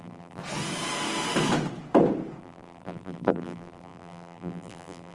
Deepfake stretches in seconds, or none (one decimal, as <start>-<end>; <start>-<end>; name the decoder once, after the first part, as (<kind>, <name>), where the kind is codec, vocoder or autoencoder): 0.0-0.4 (vocoder, BigVGAN v2); 2.4-5.1